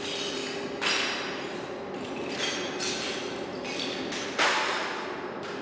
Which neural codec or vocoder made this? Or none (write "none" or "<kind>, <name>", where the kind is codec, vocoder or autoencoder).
none